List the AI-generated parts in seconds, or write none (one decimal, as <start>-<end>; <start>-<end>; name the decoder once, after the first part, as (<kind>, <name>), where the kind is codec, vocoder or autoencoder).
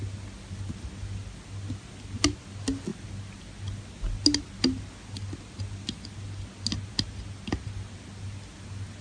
none